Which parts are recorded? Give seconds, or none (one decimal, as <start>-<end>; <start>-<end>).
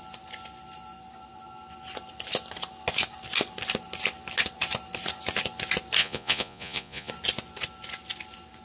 0.0-6.0; 7.1-8.6